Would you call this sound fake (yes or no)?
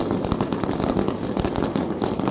no